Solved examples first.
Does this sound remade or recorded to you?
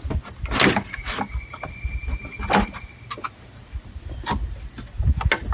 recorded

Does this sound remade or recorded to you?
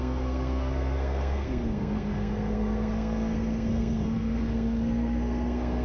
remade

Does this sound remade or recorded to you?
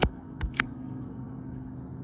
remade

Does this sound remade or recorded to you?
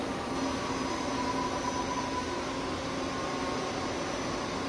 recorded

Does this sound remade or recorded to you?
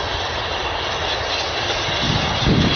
recorded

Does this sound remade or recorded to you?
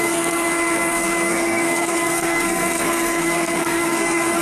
remade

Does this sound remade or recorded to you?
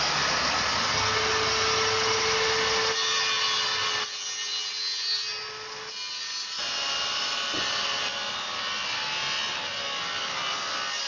recorded